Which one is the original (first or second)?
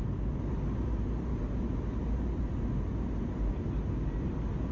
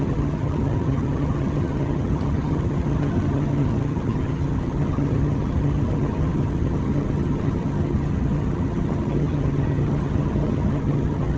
first